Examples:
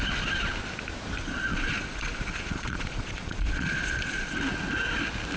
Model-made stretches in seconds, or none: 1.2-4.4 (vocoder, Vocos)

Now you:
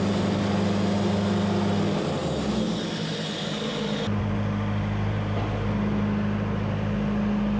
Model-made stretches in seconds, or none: none